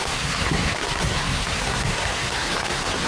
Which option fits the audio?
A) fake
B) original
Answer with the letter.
A